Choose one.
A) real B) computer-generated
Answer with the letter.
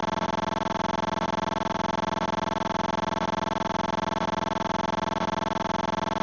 A